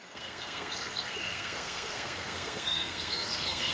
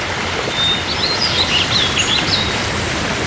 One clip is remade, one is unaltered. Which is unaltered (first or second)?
second